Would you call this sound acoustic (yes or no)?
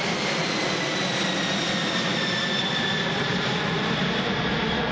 yes